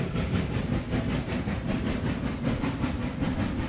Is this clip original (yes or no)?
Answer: no